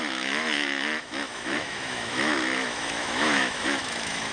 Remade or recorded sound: remade